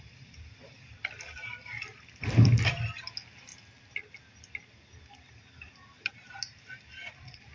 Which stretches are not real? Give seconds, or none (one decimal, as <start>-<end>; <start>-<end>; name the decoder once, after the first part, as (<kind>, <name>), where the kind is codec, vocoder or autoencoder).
none